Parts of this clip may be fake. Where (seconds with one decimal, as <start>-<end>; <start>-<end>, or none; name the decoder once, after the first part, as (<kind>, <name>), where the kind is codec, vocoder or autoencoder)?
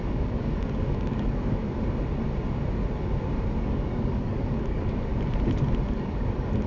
0.0-1.6 (codec, DAC); 3.6-5.1; 5.9-6.7